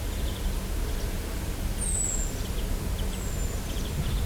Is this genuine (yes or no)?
yes